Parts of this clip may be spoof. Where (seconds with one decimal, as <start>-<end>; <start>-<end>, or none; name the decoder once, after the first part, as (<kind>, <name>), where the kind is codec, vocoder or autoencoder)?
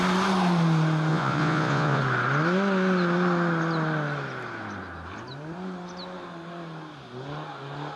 1.1-2.0 (vocoder, Vocos)